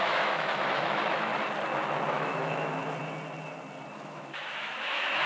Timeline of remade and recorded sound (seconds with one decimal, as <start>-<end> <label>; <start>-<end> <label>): 0.0-1.3 remade; 1.3-2.1 recorded; 2.1-2.8 remade; 2.8-3.9 recorded; 3.9-5.3 remade